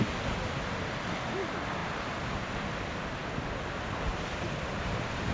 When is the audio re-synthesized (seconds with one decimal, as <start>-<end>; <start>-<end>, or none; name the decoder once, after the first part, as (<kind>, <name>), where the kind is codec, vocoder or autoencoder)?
1.8-5.3 (vocoder, BigVGAN v2)